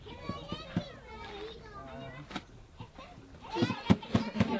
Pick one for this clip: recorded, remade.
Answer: recorded